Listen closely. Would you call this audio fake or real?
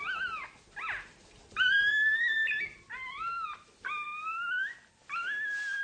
real